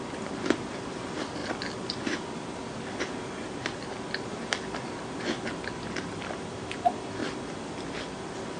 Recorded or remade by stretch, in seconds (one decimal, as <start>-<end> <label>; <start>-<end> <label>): 0.0-1.4 remade; 1.4-6.2 recorded; 6.2-7.2 remade; 7.2-8.6 recorded